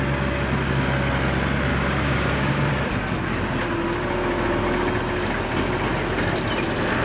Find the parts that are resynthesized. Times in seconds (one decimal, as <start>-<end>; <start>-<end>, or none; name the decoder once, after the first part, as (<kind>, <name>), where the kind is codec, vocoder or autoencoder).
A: 1.7-2.7 (codec, DAC)